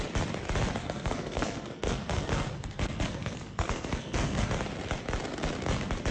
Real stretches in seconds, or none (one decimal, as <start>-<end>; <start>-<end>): 0.0-0.8; 4.5-6.1